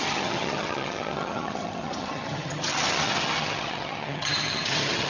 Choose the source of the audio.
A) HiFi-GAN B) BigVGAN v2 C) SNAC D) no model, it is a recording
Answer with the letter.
A